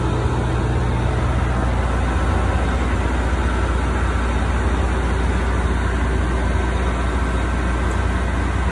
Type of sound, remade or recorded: recorded